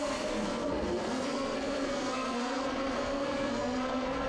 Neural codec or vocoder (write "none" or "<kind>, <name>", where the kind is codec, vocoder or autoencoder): codec, SNAC